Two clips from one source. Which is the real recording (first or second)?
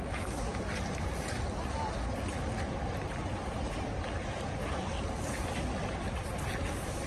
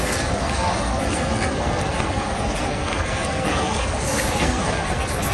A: first